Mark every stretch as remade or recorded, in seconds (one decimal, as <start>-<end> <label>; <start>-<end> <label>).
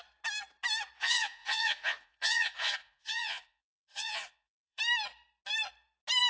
0.0-1.0 recorded; 1.0-4.8 remade; 4.8-6.3 recorded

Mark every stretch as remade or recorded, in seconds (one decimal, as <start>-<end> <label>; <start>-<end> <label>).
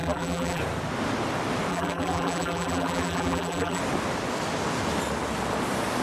0.0-0.6 remade; 0.6-1.7 recorded; 1.7-3.8 remade; 3.8-6.0 recorded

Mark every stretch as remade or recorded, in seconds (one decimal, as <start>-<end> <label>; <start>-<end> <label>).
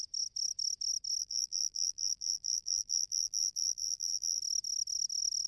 0.0-1.2 recorded; 1.2-4.4 remade; 4.4-5.5 recorded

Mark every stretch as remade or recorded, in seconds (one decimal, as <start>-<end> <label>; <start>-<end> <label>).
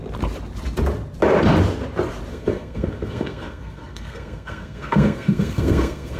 0.0-2.3 recorded; 2.3-6.2 remade